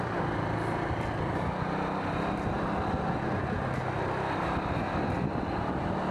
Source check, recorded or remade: recorded